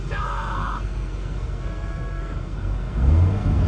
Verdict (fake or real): fake